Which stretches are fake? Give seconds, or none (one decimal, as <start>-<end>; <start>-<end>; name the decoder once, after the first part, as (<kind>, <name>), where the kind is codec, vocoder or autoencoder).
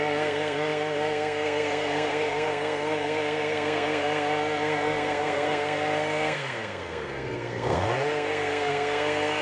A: 0.0-9.4 (codec, SNAC)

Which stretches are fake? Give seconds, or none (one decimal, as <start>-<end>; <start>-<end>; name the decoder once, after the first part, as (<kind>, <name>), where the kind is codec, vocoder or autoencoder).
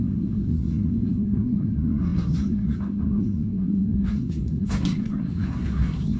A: 0.0-6.2 (codec, SNAC)